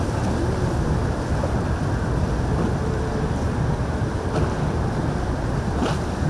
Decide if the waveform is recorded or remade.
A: recorded